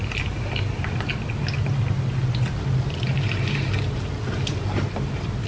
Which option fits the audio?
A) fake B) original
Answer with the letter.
B